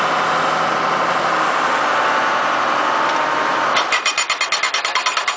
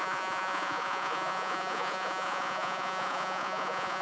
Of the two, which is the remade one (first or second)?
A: second